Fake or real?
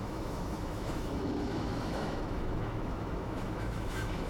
fake